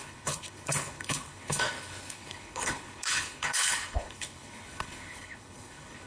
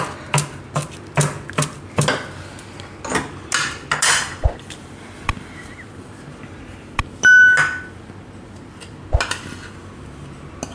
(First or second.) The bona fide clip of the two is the second